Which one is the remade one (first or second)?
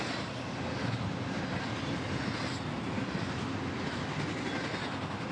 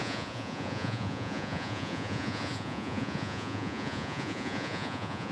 second